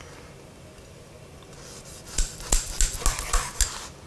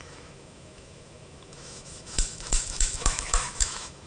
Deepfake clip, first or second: second